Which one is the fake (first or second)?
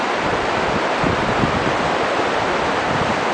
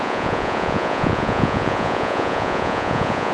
second